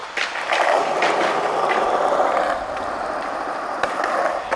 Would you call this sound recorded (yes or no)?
no